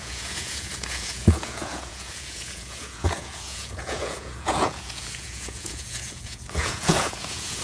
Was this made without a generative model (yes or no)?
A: no